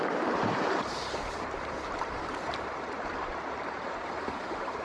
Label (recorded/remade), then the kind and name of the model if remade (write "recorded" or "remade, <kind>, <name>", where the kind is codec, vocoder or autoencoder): remade, vocoder, BigVGAN v2